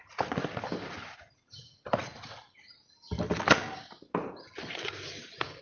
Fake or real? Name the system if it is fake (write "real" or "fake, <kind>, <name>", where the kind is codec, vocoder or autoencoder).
real